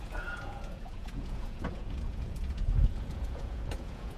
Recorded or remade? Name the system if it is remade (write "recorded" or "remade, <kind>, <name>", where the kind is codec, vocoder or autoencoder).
remade, vocoder, Vocos